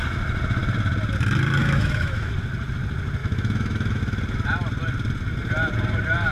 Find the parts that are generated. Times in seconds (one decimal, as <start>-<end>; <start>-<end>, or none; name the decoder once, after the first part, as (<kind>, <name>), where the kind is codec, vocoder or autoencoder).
1.6-2.3 (autoencoder, DAC-VAE); 3.2-4.0

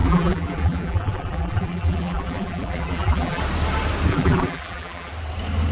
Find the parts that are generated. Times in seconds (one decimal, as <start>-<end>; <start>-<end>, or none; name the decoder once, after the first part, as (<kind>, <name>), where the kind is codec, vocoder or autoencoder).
0.0-3.4 (vocoder, BigVGAN v2); 4.1-5.1